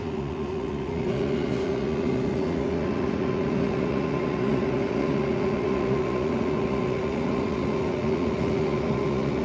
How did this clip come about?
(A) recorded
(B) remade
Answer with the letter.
B